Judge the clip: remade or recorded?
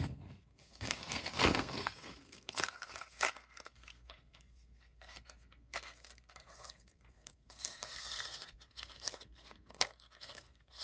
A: remade